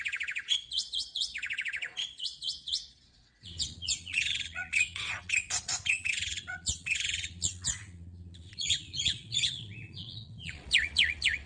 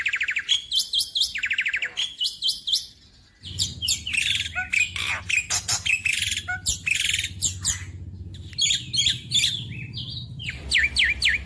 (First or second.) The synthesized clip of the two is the first